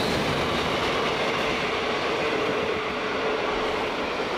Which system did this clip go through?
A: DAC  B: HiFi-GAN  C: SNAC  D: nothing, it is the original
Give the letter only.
D